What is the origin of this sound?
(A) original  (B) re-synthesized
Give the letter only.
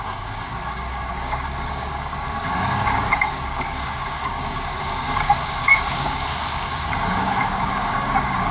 B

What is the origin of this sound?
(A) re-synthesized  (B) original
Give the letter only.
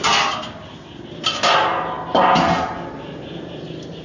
B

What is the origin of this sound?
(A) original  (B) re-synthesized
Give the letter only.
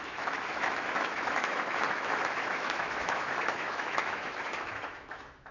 B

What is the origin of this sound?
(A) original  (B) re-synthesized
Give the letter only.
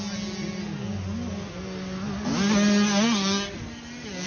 A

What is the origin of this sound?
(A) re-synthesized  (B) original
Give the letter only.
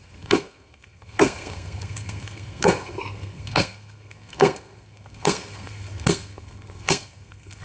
A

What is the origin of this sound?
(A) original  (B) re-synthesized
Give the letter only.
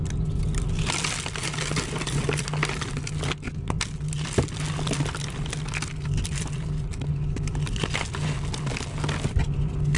A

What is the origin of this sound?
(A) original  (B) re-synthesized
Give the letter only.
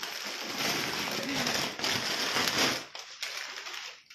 A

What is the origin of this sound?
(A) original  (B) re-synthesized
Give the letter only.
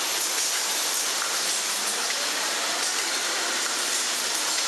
B